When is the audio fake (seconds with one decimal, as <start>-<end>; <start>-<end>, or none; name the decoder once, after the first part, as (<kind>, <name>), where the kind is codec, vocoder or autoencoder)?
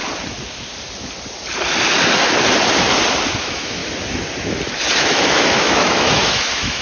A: 3.4-3.8 (autoencoder, DAC-VAE); 5.0-6.8